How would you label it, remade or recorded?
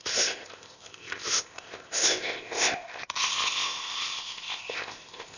remade